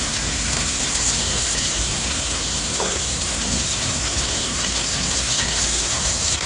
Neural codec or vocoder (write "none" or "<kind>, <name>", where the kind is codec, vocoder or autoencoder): codec, SNAC